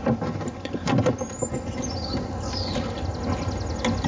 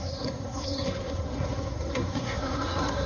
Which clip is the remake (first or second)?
second